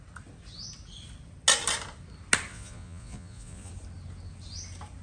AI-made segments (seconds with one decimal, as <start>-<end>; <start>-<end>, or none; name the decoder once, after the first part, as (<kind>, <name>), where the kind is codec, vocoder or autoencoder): 2.5-3.7 (vocoder, Vocos)